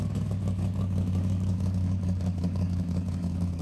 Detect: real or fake fake